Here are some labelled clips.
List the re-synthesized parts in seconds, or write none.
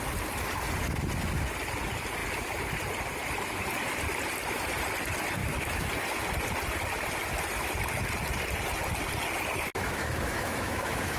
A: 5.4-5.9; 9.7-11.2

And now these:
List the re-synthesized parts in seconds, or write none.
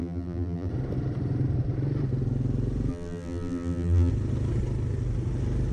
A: 0.0-0.7; 2.9-4.1